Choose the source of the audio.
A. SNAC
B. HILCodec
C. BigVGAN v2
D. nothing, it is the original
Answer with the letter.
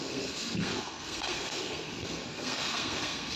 A